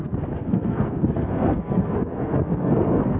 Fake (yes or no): yes